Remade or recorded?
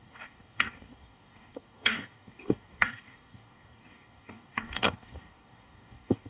remade